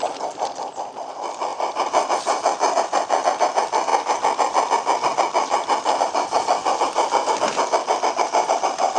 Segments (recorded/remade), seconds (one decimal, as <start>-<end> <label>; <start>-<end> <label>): 0.0-3.9 remade; 3.9-6.0 recorded; 6.0-6.6 remade; 6.6-8.1 recorded; 8.1-9.0 remade